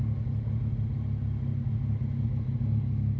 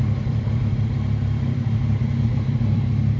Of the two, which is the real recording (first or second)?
first